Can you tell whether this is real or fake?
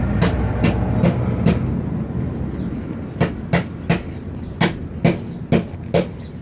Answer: real